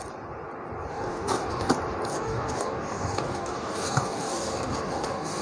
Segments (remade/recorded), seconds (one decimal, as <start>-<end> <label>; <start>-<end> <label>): 0.0-0.9 recorded; 0.9-1.7 remade; 1.7-2.1 recorded; 2.1-5.4 remade

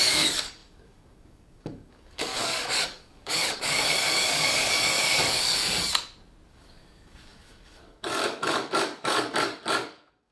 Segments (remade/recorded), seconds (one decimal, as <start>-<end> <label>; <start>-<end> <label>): 0.0-5.6 remade; 5.6-6.5 recorded; 6.5-10.3 remade